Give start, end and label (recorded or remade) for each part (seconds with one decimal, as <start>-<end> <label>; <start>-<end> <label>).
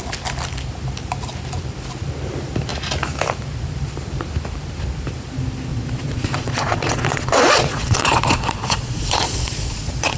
0.0-5.7 recorded; 5.7-10.2 remade